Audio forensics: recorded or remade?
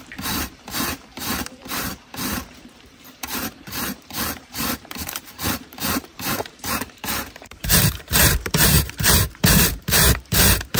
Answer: remade